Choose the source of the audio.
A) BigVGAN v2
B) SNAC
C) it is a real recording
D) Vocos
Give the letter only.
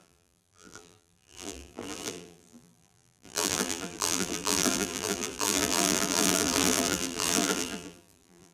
A